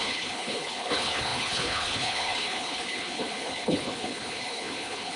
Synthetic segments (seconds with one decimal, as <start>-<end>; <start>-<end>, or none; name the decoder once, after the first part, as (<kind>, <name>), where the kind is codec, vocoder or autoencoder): 0.0-5.2 (codec, HILCodec)